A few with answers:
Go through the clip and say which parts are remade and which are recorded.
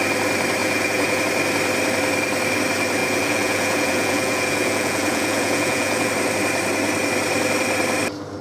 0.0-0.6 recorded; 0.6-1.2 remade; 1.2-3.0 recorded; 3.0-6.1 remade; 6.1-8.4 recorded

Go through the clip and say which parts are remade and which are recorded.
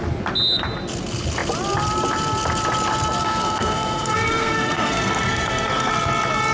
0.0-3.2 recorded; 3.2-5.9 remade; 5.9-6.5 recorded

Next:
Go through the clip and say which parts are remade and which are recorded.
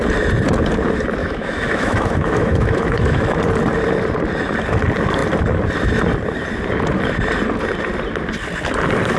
0.0-1.2 recorded; 1.2-3.4 remade; 3.4-9.2 recorded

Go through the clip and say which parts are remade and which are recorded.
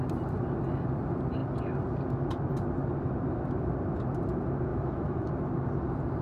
0.0-4.7 recorded; 4.7-5.3 remade; 5.3-6.2 recorded